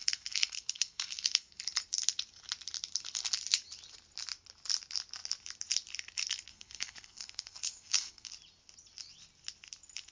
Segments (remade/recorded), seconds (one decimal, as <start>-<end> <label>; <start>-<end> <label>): 0.0-1.5 remade; 1.5-6.5 recorded; 6.5-8.3 remade; 8.3-10.1 recorded